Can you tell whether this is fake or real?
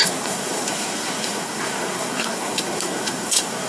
fake